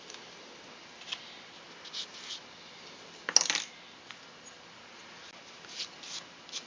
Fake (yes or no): no